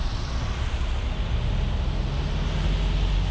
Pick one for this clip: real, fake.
real